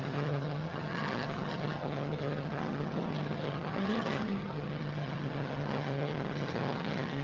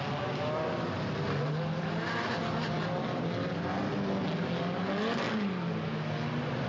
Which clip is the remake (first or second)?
first